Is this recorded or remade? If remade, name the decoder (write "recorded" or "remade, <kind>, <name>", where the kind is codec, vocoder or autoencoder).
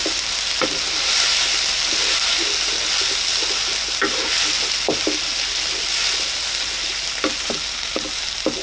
recorded